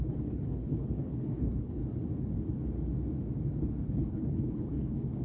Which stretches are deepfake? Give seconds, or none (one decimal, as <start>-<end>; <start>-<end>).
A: 0.0-1.8; 3.6-5.2